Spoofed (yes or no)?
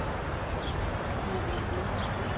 no